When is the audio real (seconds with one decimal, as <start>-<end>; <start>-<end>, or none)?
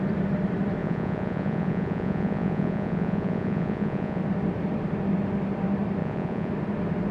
0.0-0.8; 4.2-6.0; 6.5-7.1